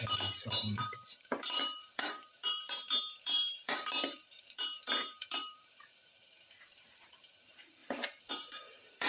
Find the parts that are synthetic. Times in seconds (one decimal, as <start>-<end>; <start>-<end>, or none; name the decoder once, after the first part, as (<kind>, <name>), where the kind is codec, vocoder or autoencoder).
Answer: 0.0-9.1 (vocoder, BigVGAN v2)